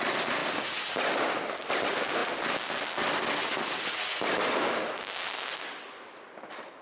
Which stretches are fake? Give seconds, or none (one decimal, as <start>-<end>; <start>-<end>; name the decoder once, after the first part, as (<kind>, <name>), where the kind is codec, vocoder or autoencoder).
none